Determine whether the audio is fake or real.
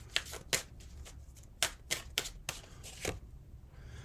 real